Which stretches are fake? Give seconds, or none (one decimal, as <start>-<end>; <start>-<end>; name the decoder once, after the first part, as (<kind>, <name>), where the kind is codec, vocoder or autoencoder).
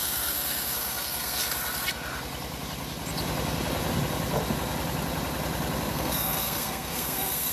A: 0.0-1.4 (codec, SNAC); 5.9-7.5